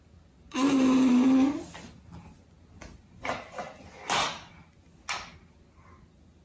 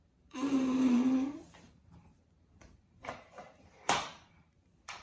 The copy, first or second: second